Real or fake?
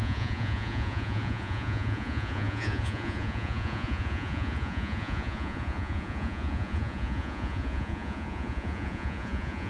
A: fake